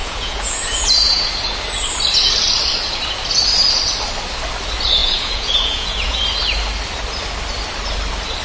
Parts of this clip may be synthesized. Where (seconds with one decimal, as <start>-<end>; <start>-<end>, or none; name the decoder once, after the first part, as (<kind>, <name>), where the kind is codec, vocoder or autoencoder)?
0.0-1.3 (vocoder, Vocos); 5.0-6.2